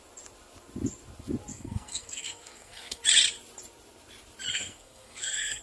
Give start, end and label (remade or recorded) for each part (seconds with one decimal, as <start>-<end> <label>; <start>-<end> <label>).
0.0-1.5 recorded; 1.5-3.0 remade; 3.0-4.5 recorded; 4.5-5.6 remade